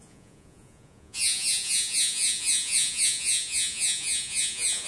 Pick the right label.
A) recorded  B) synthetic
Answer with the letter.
B